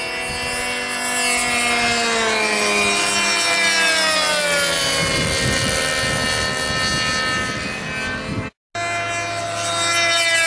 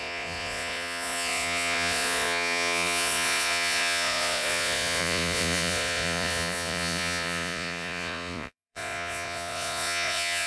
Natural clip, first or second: first